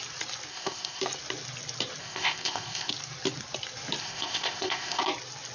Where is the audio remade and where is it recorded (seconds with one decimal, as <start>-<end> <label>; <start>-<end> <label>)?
0.0-0.5 recorded; 0.5-1.0 remade; 1.0-2.0 recorded; 2.0-2.9 remade; 2.9-4.0 recorded; 4.0-5.0 remade; 5.0-5.5 recorded